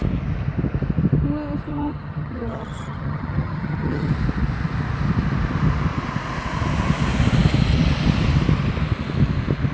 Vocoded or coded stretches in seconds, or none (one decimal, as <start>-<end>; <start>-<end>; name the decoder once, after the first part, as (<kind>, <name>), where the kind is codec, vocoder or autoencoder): 1.7-4.1 (vocoder, HiFi-GAN)